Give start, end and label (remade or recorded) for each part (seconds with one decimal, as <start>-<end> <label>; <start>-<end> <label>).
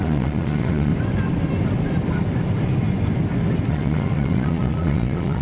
0.0-0.9 remade; 0.9-3.7 recorded; 3.7-5.4 remade